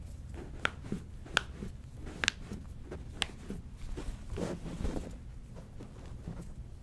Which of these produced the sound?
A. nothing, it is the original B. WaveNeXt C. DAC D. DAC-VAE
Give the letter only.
A